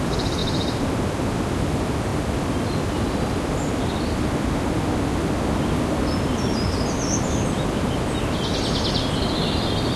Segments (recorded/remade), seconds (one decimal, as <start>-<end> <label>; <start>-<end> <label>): 0.0-10.0 recorded